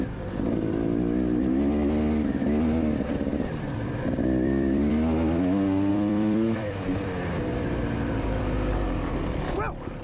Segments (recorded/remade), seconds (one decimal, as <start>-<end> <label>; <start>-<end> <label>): 0.0-3.3 recorded; 3.3-4.9 remade; 4.9-5.9 recorded; 5.9-8.4 remade; 8.4-10.0 recorded